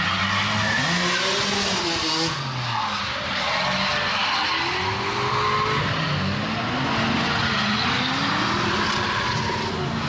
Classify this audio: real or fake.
real